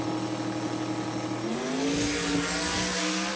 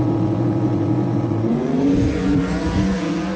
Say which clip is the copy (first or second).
second